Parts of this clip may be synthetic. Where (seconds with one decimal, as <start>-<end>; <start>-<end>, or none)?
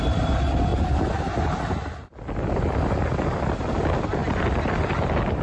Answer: none